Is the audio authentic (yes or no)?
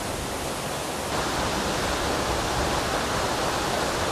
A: yes